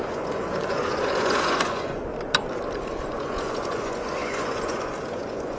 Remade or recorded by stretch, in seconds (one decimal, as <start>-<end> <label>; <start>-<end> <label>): 0.0-2.1 remade; 2.1-3.0 recorded; 3.0-5.6 remade

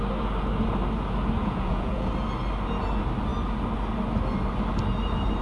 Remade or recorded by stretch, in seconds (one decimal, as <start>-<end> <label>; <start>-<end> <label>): 0.0-1.4 recorded; 1.4-2.1 remade; 2.1-5.4 recorded

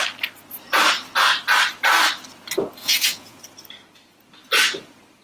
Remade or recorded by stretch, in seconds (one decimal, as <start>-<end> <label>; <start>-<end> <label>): 0.0-2.8 recorded; 2.8-3.4 remade; 3.4-5.2 recorded

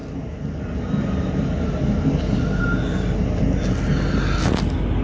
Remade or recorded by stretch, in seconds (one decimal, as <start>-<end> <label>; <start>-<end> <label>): 0.0-5.0 recorded

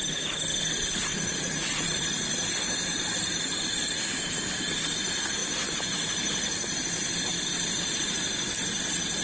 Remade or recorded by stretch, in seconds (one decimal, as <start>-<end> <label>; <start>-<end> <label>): 0.0-1.1 recorded; 1.1-2.5 remade; 2.5-9.2 recorded

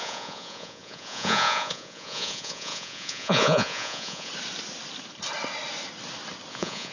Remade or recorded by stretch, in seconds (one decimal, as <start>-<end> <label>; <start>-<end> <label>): 0.0-4.3 remade; 4.3-6.5 recorded; 6.5-6.9 remade